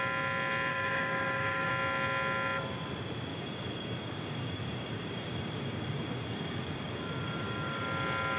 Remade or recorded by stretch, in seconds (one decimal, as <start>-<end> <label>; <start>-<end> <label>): 0.0-0.7 recorded; 0.7-1.7 remade; 1.7-3.3 recorded; 3.3-7.8 remade; 7.8-8.4 recorded